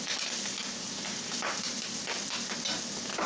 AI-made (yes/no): no